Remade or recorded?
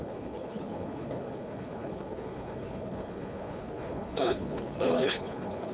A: remade